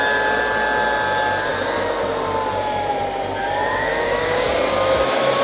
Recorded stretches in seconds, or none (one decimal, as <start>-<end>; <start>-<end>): 0.0-3.4; 4.6-5.4